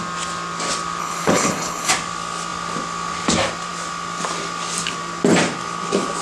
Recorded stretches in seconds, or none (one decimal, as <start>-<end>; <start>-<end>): 0.0-1.0; 1.9-6.2